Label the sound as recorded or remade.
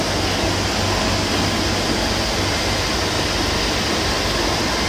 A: recorded